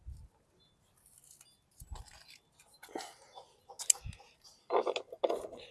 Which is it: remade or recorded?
recorded